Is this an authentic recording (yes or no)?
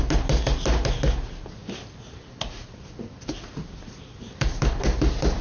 yes